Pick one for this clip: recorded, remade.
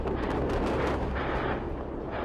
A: recorded